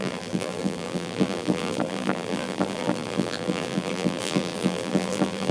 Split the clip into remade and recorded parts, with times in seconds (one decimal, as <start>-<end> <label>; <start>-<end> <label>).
0.0-5.5 remade